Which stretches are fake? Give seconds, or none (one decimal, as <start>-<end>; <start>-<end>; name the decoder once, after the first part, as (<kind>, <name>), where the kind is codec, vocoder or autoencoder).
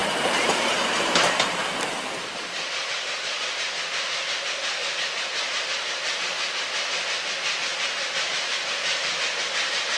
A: 0.0-0.7 (vocoder, BigVGAN v2); 2.8-3.4; 4.8-6.2; 7.7-9.4